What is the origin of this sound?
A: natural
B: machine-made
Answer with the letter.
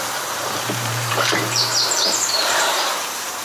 B